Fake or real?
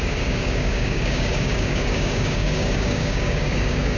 fake